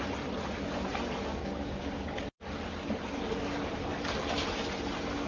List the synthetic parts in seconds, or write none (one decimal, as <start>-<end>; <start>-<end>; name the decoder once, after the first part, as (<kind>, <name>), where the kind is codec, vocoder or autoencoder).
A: 1.4-2.2 (codec, DAC)